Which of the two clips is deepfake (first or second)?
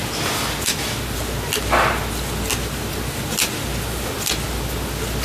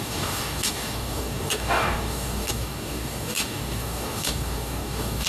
second